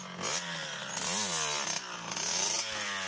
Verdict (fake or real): real